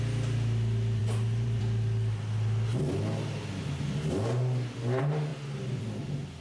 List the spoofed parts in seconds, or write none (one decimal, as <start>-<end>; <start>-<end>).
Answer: 1.0-1.6